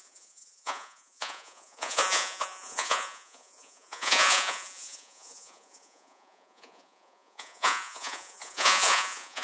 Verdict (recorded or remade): remade